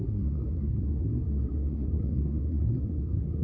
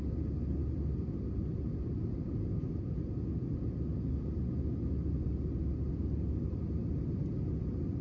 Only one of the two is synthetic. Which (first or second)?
first